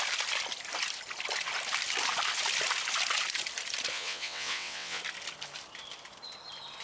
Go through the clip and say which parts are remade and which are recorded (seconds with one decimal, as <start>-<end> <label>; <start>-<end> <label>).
0.0-3.9 recorded; 3.9-5.0 remade; 5.0-6.8 recorded